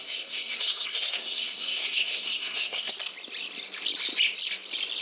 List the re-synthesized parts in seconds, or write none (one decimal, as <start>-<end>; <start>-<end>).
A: 0.0-3.0